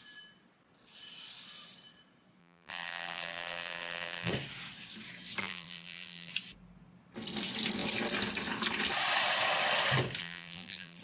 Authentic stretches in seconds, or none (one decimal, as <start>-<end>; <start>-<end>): 0.0-2.4; 4.3-5.4; 6.3-10.2